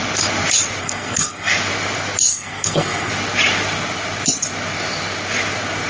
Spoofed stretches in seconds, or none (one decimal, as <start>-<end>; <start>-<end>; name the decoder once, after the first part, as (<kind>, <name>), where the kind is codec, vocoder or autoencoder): 0.8-1.5 (codec, SNAC); 2.3-3.1